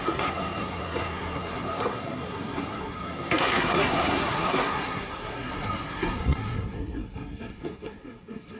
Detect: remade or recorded remade